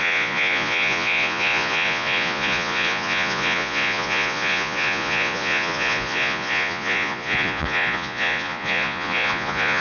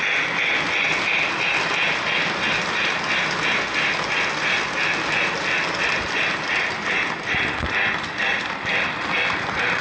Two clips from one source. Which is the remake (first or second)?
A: first